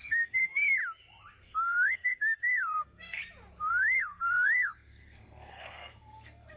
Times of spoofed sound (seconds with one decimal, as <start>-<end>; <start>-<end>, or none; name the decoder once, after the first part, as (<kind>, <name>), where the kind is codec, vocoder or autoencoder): 0.0-0.8 (codec, SNAC); 1.4-3.2; 3.7-6.6